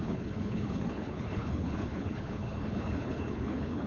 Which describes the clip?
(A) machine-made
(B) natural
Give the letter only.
A